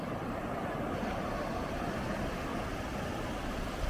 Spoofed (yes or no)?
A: yes